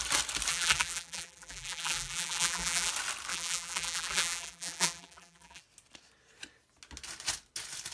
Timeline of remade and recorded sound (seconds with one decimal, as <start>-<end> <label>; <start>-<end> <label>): 0.0-0.5 recorded; 0.5-2.9 remade; 2.9-3.3 recorded; 3.3-5.6 remade; 5.6-7.9 recorded